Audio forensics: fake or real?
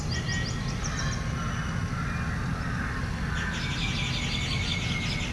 real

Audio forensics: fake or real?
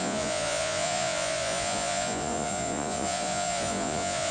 fake